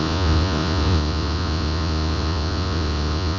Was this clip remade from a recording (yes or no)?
yes